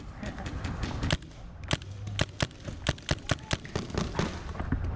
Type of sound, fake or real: real